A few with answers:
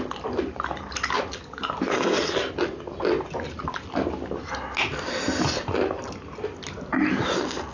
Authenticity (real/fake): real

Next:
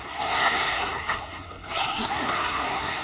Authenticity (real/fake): fake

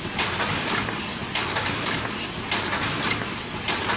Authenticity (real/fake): real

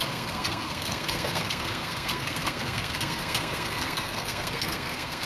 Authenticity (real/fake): fake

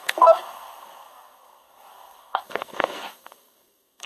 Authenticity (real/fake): fake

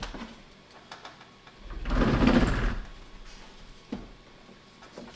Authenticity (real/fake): real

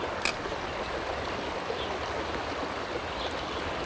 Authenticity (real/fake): real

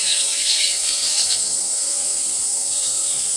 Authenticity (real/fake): fake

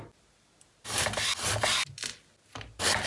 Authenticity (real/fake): real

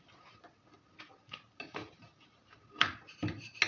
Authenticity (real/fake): real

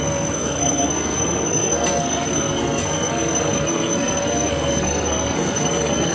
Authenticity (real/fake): fake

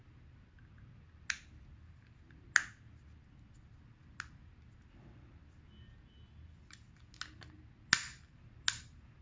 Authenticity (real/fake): real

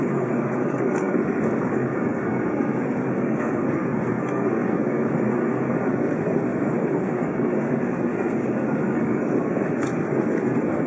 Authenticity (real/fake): fake